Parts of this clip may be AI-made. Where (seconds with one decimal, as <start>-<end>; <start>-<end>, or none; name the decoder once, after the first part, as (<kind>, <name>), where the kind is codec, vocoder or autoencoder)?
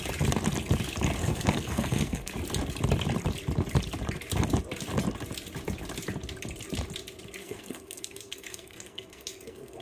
1.2-2.3 (codec, SNAC); 7.4-9.8